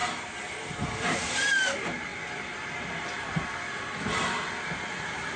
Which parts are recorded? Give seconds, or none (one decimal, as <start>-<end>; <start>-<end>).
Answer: 0.0-5.4